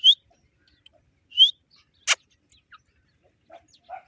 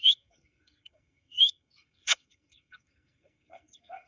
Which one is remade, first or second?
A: second